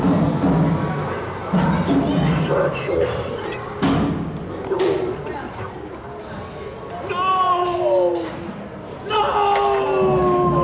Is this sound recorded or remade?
recorded